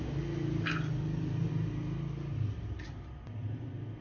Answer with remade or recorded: recorded